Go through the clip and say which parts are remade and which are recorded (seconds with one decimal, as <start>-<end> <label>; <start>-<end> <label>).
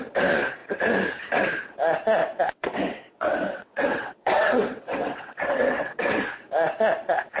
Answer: 0.0-2.2 recorded; 2.2-6.1 remade; 6.1-7.4 recorded